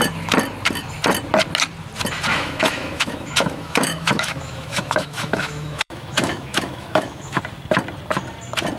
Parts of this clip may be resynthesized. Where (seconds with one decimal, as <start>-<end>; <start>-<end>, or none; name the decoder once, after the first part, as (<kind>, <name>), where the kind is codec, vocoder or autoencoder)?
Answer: 2.3-7.4 (autoencoder, DAC-VAE)